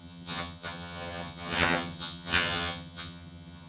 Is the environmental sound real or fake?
fake